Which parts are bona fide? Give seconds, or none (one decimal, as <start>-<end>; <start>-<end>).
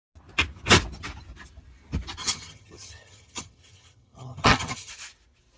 0.0-2.2; 4.9-5.6